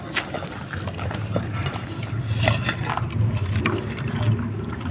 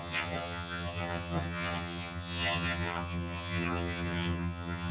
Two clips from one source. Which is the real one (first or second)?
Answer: first